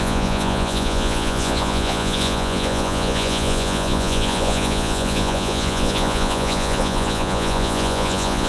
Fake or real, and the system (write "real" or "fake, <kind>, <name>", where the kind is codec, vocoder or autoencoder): fake, vocoder, Vocos